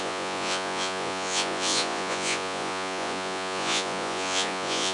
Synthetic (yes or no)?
yes